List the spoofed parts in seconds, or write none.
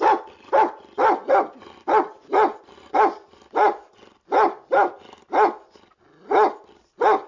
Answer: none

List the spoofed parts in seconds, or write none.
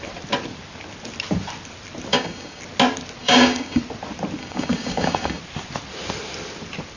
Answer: 2.1-2.6; 3.2-3.8; 4.4-5.4